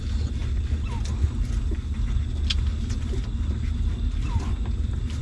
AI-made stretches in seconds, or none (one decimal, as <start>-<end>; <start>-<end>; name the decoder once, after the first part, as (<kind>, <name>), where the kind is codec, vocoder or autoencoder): none